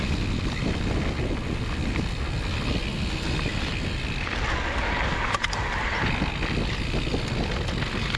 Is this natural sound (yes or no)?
yes